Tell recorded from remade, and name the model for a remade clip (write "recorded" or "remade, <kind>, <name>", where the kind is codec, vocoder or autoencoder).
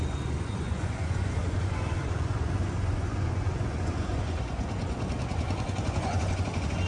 remade, vocoder, Vocos